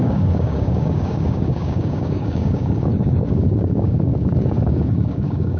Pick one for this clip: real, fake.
fake